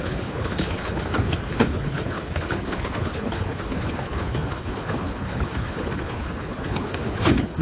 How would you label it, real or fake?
fake